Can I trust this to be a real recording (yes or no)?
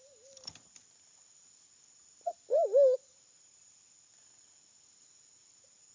yes